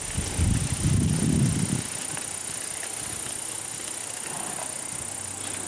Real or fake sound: real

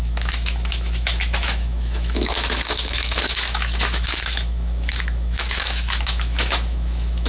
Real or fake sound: fake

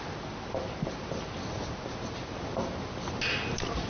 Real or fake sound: real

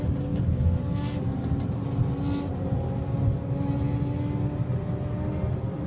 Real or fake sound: real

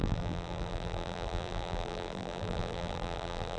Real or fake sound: fake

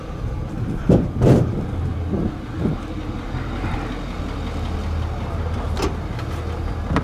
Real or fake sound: real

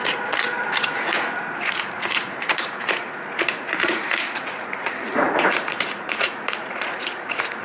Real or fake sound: fake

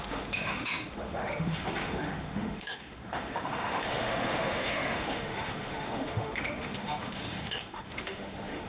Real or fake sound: fake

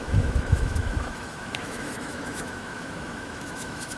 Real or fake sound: fake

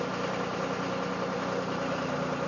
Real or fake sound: real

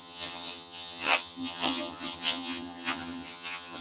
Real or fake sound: fake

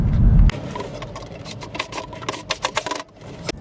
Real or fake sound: real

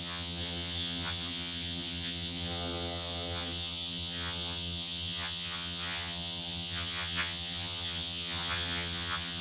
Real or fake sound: fake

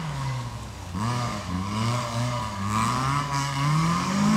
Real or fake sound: fake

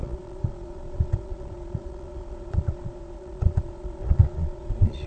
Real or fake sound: fake